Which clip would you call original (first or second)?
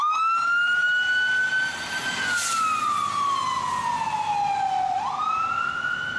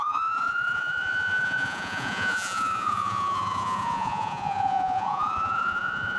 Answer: first